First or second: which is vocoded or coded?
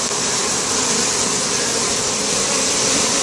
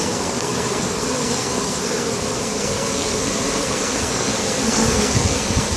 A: second